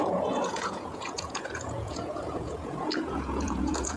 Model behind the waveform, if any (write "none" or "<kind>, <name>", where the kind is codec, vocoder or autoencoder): vocoder, Vocos